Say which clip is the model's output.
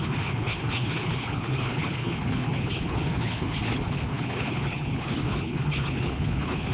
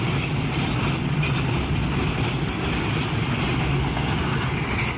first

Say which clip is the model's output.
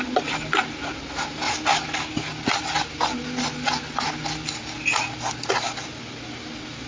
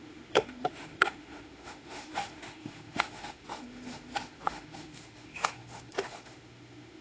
second